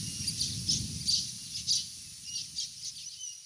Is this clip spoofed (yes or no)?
no